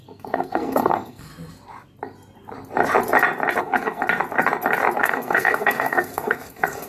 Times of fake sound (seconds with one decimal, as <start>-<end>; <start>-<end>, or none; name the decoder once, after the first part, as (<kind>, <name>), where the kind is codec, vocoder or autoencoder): 0.0-1.3 (codec, SNAC); 3.6-4.0; 5.0-6.9